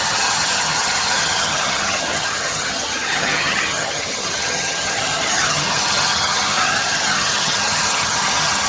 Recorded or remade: remade